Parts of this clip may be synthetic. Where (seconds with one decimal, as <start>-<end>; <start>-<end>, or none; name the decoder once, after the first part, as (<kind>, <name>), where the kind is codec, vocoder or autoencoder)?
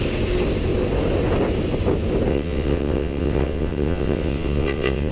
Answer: 2.3-5.1 (vocoder, WaveNeXt)